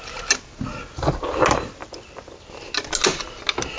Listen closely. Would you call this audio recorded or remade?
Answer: recorded